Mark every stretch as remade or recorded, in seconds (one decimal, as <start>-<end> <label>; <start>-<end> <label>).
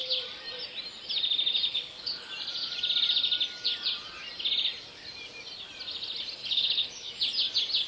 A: 0.0-1.7 recorded; 1.7-2.3 remade; 2.3-6.4 recorded; 6.4-7.1 remade; 7.1-7.9 recorded